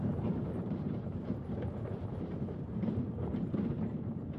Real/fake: fake